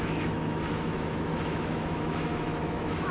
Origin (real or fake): fake